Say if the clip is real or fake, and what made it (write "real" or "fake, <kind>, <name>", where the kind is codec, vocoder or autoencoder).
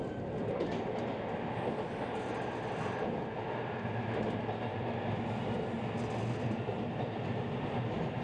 real